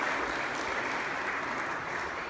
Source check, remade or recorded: recorded